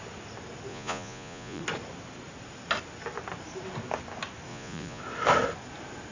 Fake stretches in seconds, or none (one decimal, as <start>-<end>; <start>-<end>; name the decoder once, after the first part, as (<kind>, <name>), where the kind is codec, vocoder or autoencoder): 0.7-1.6 (vocoder, Vocos); 4.5-5.0